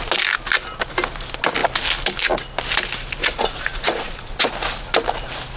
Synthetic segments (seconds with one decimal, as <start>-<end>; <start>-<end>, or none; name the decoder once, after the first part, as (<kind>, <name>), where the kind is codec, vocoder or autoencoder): 3.2-4.5 (vocoder, Vocos)